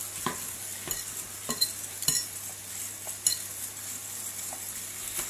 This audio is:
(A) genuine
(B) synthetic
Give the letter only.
A